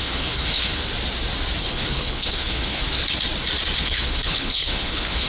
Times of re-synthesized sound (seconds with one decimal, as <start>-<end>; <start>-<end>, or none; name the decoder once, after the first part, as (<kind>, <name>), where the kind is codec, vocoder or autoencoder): 0.0-0.8 (codec, HILCodec); 1.6-2.8; 3.8-5.3